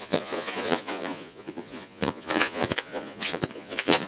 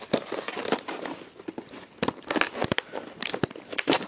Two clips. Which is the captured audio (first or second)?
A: second